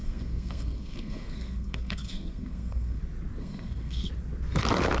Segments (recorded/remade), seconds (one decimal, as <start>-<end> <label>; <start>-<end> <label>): 0.0-3.0 remade; 3.0-3.4 recorded; 3.4-4.1 remade; 4.1-5.0 recorded